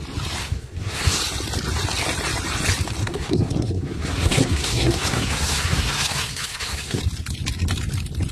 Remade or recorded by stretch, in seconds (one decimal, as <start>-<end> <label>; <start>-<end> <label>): 0.0-0.4 recorded; 0.4-1.2 remade; 1.2-3.0 recorded; 3.0-7.0 remade; 7.0-8.3 recorded